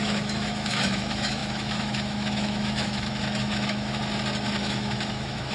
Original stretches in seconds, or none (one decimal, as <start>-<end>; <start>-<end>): 4.0-4.6